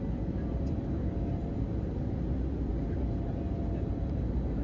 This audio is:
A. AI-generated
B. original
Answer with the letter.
B